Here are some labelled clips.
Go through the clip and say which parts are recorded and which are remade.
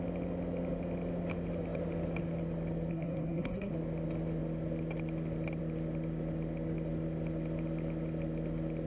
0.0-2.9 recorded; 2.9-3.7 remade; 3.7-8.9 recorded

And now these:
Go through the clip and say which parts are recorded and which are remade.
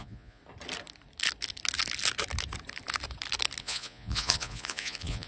0.0-0.4 remade; 0.4-3.6 recorded; 3.6-5.3 remade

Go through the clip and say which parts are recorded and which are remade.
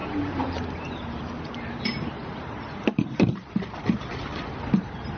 0.0-0.6 remade; 0.6-1.0 recorded; 1.0-4.1 remade; 4.1-5.2 recorded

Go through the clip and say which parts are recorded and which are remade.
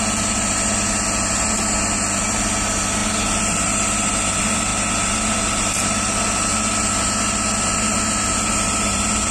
0.0-9.3 recorded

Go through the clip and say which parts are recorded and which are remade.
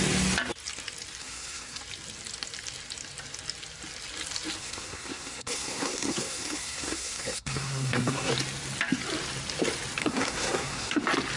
0.0-1.2 recorded; 1.2-1.8 remade; 1.8-4.6 recorded; 4.6-8.3 remade; 8.3-10.0 recorded; 10.0-11.0 remade; 11.0-11.4 recorded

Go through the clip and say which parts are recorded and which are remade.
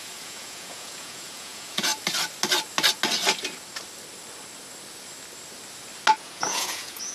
0.0-1.9 remade; 1.9-6.2 recorded; 6.2-7.1 remade